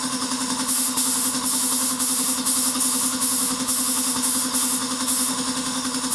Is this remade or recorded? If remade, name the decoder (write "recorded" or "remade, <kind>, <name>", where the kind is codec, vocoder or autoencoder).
remade, autoencoder, DAC-VAE